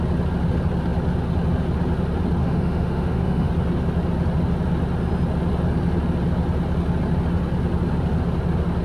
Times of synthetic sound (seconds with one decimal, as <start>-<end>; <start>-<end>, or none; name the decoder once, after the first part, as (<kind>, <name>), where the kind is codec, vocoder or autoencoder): 2.4-3.5 (autoencoder, DAC-VAE)